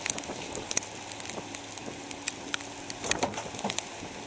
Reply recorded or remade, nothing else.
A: recorded